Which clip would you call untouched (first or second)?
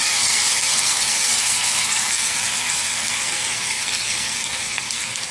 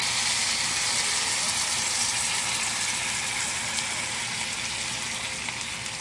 second